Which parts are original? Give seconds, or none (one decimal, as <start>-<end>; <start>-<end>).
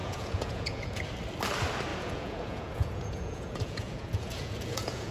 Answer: 1.0-1.9